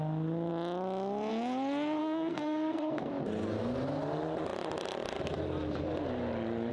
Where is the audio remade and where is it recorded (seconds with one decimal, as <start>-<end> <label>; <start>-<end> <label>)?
0.0-2.0 recorded; 2.0-3.1 remade; 3.1-6.7 recorded